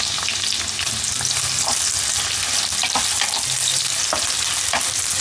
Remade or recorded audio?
recorded